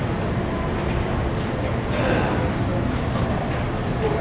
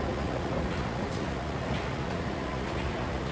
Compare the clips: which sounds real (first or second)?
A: first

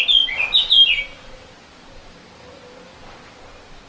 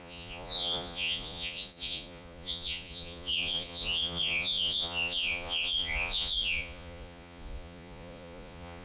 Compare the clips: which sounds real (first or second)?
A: first